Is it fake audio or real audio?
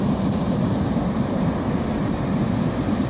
real